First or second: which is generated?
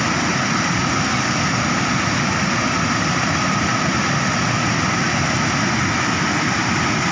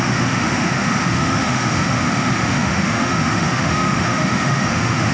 second